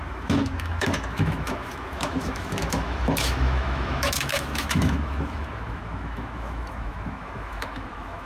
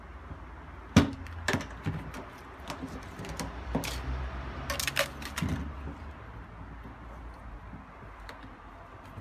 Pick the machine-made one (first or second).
first